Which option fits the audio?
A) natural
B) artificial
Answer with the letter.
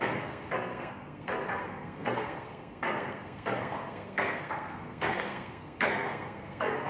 B